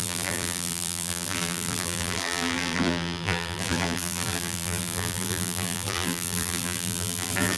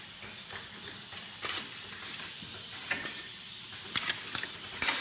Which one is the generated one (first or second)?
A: first